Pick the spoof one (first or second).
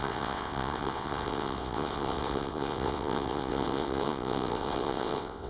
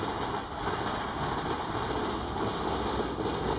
first